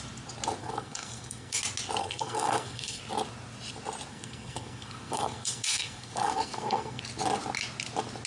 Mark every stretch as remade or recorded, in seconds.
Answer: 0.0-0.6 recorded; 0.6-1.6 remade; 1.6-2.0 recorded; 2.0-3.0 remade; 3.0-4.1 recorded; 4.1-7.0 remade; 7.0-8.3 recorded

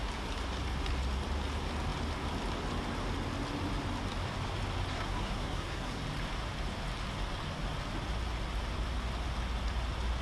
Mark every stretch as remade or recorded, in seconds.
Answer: 0.0-4.9 recorded; 4.9-6.0 remade; 6.0-10.2 recorded

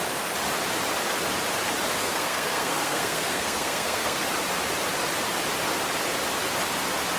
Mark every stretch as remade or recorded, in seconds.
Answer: 0.0-2.0 recorded; 2.0-4.2 remade; 4.2-7.2 recorded

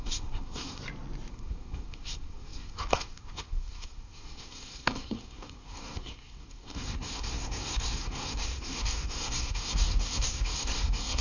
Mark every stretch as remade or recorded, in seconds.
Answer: 0.0-0.8 remade; 0.8-1.3 recorded; 1.3-11.2 remade

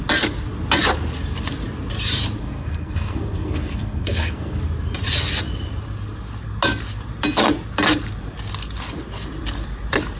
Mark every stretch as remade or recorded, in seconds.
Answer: 0.0-2.4 recorded; 2.4-4.6 remade; 4.6-10.2 recorded

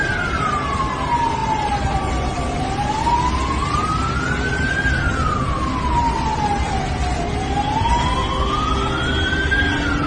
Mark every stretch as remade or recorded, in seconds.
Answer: 0.0-10.1 recorded